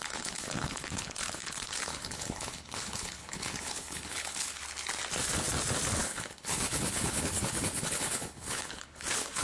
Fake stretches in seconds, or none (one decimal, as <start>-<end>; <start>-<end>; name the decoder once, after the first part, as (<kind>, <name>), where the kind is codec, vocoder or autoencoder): 0.0-4.6 (codec, HILCodec); 6.0-9.4